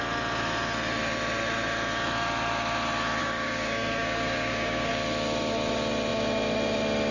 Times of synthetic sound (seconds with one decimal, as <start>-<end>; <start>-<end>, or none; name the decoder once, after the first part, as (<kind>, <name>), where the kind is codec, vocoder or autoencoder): 3.2-4.9 (codec, DAC)